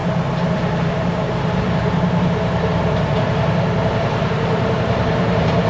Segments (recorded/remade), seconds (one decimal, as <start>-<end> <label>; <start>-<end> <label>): 0.0-2.7 remade; 2.7-3.8 recorded; 3.8-5.7 remade